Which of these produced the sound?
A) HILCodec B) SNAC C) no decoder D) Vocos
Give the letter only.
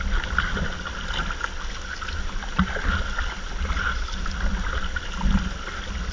C